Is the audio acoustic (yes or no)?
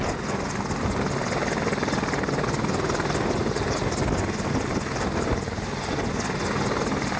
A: yes